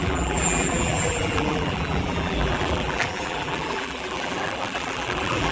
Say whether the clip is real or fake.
fake